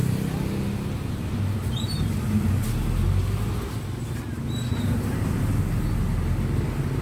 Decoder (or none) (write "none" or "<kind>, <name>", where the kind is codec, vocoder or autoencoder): none